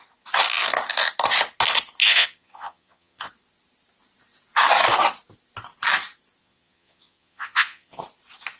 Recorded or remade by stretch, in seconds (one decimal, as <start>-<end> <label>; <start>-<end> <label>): 0.0-2.0 recorded; 2.0-3.3 remade; 3.3-6.4 recorded; 6.4-8.0 remade; 8.0-8.6 recorded